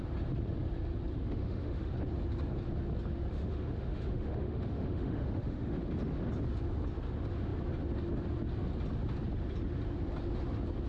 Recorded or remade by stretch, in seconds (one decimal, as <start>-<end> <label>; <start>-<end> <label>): 0.0-1.1 recorded; 1.1-1.9 remade; 1.9-3.3 recorded; 3.3-5.8 remade; 5.8-10.9 recorded